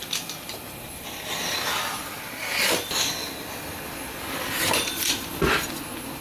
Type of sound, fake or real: real